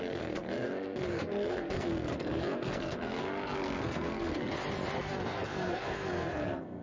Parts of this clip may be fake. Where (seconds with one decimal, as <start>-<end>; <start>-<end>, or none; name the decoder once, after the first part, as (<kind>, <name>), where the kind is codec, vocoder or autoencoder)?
0.0-4.5 (codec, SNAC); 5.0-6.8